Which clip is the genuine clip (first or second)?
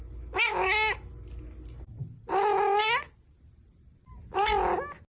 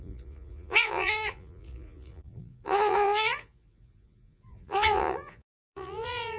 first